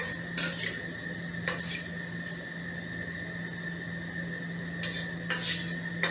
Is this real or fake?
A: real